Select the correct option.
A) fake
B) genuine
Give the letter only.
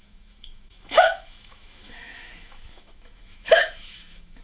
A